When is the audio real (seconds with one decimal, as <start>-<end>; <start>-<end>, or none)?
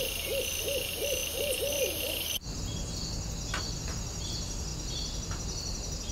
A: 0.0-6.1